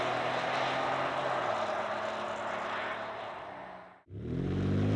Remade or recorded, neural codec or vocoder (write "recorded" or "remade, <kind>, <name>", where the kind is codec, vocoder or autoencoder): recorded